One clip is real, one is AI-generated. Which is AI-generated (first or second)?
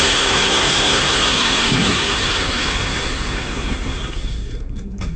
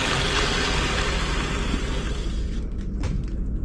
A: first